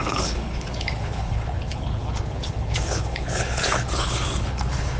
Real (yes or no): no